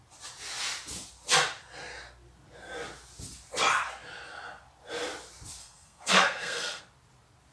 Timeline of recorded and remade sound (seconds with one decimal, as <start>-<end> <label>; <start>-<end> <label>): 0.0-5.6 recorded; 5.6-6.8 remade; 6.8-7.5 recorded